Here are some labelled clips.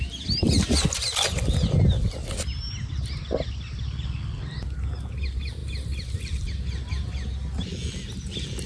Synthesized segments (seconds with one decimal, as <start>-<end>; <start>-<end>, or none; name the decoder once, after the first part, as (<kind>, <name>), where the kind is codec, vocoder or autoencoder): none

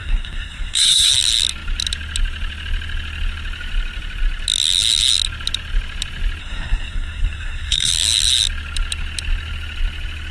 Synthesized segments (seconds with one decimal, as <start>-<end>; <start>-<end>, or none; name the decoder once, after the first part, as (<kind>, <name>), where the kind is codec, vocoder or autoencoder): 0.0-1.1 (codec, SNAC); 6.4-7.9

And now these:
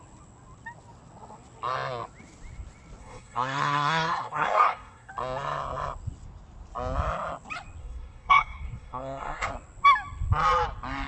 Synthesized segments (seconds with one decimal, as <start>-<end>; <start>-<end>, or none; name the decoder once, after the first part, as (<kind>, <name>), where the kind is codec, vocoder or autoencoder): 3.0-5.1 (codec, SNAC); 7.8-9.5

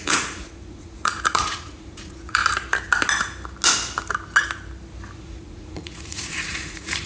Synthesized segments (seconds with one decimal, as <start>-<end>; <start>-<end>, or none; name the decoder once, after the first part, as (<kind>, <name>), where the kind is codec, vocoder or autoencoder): 0.0-2.4 (vocoder, Vocos); 5.2-7.1

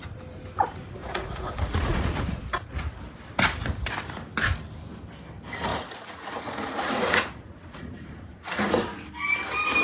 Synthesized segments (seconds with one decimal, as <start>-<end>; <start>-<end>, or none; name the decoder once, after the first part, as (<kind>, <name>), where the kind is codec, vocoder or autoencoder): 1.0-2.4 (vocoder, Vocos); 5.7-9.1

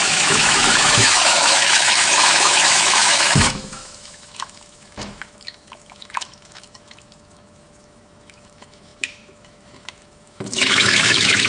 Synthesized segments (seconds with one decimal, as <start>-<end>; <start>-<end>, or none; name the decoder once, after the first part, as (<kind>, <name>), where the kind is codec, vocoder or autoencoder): 0.0-11.5 (autoencoder, DAC-VAE)

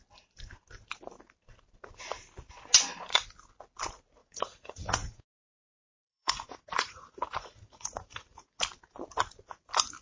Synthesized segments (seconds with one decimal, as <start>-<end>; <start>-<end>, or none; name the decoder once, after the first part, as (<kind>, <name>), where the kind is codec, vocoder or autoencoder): 4.2-8.6 (vocoder, Vocos)